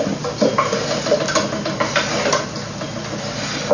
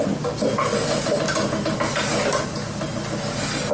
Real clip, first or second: second